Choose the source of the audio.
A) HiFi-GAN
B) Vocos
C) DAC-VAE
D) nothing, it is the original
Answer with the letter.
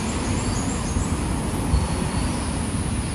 D